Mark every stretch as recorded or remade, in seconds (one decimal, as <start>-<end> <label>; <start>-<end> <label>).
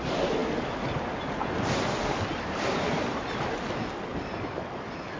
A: 0.0-5.2 recorded